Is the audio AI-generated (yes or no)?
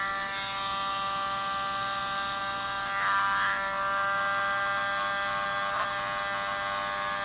no